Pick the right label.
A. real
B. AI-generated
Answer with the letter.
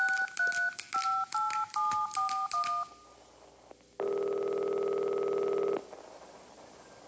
A